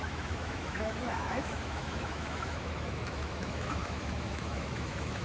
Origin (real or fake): fake